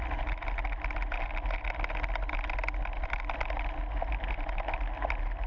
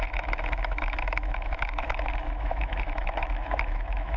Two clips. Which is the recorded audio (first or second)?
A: first